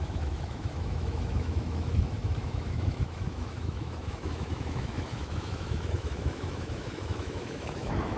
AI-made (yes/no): yes